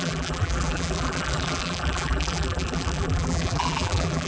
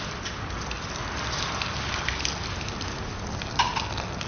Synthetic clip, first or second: first